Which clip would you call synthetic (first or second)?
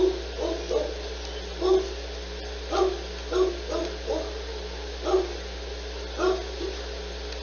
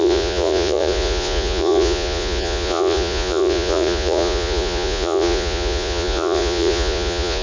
second